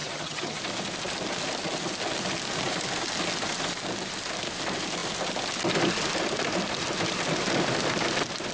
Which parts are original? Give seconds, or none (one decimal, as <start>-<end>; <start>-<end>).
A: 0.6-8.5